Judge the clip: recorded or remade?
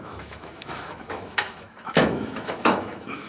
remade